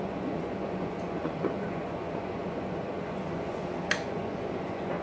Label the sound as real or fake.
fake